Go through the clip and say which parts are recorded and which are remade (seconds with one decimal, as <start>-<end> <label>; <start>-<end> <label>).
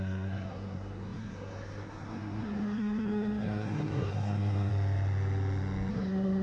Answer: 0.0-4.7 remade; 4.7-5.9 recorded; 5.9-6.4 remade